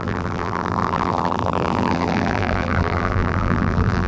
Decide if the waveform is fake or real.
fake